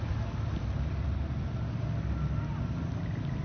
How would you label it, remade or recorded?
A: recorded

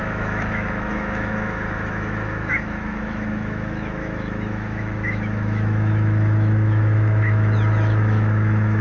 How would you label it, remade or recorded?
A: remade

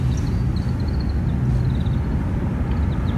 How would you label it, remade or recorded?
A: recorded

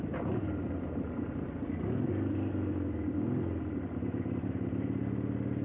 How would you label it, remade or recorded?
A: recorded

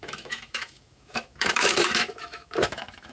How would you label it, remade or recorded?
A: remade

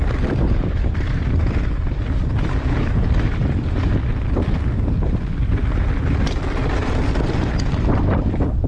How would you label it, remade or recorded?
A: remade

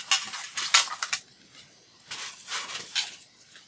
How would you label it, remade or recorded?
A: recorded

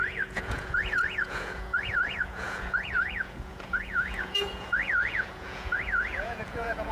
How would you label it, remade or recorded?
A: remade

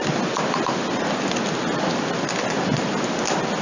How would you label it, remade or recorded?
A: recorded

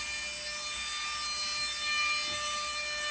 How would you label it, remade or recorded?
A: recorded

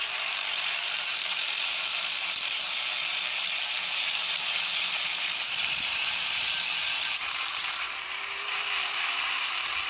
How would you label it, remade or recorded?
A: remade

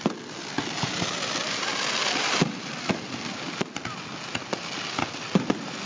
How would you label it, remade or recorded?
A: recorded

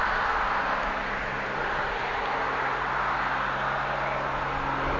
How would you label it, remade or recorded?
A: recorded